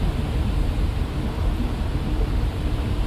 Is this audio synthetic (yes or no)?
yes